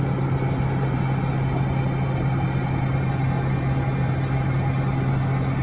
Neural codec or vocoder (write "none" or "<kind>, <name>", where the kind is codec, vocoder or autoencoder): none